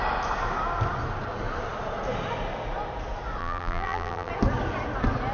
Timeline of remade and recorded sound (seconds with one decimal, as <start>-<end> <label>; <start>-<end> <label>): 0.0-3.4 recorded; 3.4-4.3 remade; 4.3-5.3 recorded